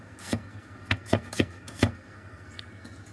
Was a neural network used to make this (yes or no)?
yes